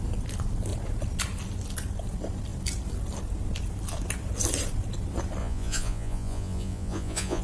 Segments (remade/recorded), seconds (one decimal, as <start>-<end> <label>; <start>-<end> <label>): 0.0-5.4 recorded; 5.4-7.4 remade